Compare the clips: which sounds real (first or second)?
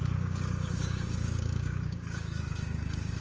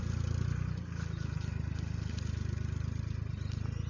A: second